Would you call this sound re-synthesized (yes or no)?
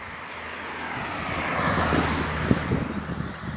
no